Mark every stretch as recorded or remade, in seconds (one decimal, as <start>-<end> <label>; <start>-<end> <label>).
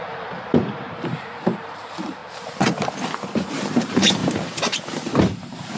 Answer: 0.0-2.2 remade; 2.2-3.6 recorded; 3.6-4.2 remade; 4.2-5.2 recorded; 5.2-5.8 remade